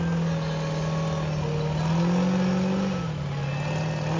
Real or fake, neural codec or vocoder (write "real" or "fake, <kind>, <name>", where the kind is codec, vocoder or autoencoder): real